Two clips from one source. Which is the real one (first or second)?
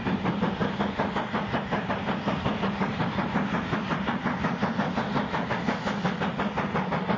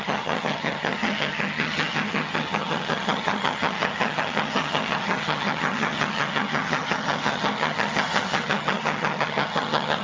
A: first